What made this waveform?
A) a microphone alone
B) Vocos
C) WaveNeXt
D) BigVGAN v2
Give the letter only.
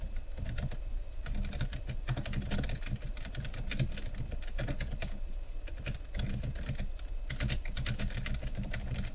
D